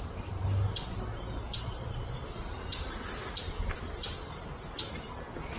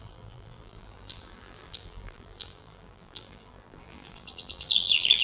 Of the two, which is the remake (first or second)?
second